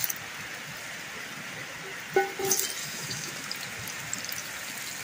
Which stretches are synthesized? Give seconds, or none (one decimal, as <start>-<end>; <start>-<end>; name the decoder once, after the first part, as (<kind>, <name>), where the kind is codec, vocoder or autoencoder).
2.8-3.3 (autoencoder, DAC-VAE)